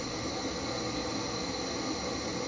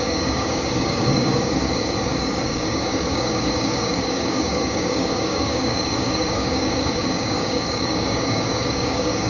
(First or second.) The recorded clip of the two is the first